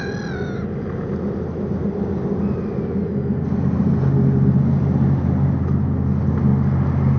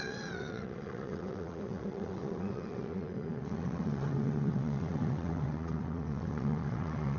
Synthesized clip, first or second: second